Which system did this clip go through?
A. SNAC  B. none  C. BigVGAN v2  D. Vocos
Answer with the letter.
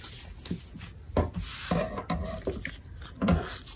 B